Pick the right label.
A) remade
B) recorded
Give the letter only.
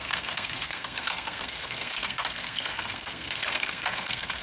A